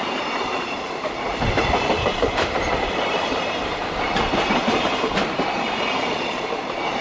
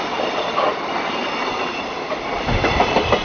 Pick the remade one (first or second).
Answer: first